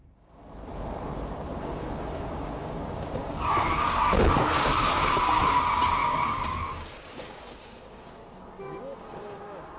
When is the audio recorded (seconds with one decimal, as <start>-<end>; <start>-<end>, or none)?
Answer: 0.4-1.6; 8.2-9.0